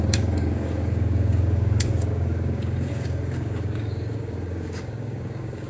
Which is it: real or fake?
fake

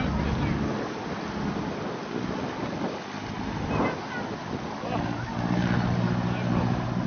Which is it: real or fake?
real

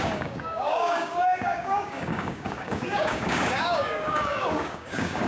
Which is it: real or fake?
fake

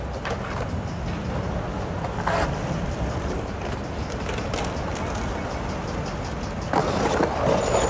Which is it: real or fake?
real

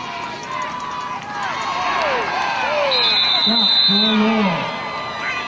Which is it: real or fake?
real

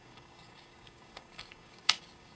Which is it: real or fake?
fake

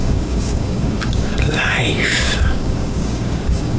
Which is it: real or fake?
fake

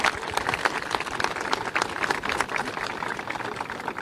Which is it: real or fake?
real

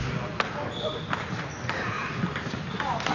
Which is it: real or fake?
real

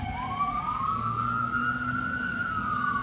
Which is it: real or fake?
fake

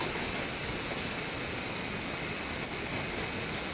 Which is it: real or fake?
real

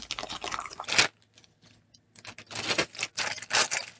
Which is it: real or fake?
real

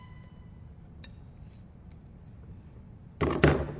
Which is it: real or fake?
real